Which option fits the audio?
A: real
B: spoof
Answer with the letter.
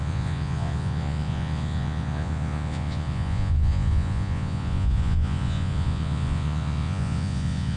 B